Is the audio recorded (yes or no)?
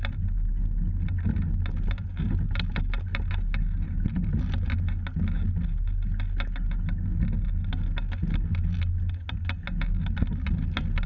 yes